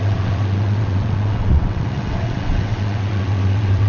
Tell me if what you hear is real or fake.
fake